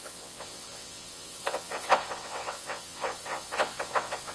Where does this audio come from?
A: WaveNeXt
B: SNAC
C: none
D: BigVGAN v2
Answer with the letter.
A